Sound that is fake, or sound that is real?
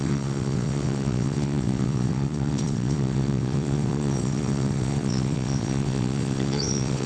fake